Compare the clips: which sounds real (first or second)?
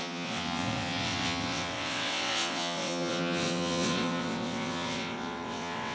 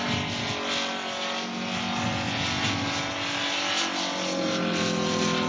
second